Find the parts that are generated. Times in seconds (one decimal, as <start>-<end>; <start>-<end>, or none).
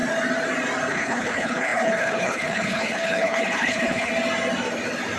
0.9-4.1